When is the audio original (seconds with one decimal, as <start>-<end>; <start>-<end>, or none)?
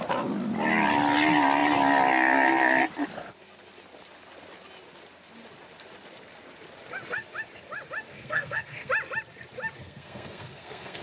0.0-8.1; 8.9-9.8